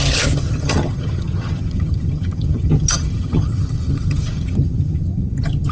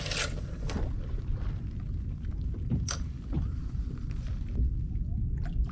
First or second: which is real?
second